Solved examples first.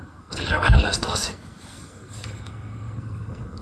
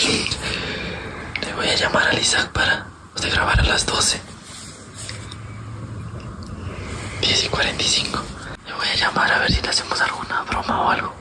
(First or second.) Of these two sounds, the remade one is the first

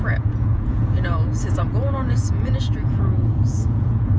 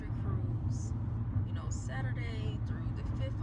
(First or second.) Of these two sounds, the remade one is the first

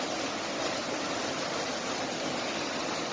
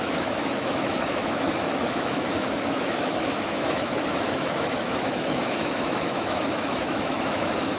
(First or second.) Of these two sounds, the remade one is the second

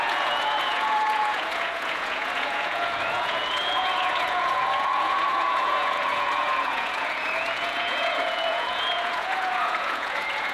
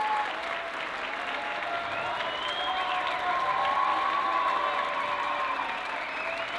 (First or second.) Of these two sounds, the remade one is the first